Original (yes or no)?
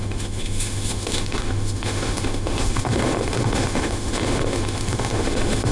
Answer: no